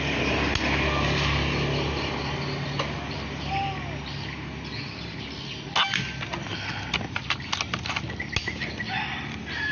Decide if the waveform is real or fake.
real